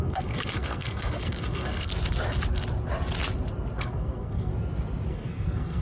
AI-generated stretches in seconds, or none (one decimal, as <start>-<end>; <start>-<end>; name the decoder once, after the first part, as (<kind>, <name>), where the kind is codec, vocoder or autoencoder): 0.0-1.9 (codec, SNAC); 3.8-4.5; 5.1-5.8